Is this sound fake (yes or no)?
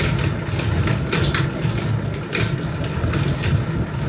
no